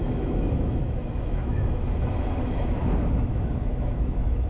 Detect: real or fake fake